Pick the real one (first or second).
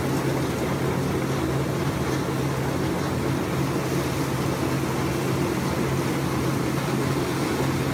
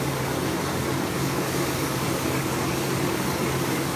first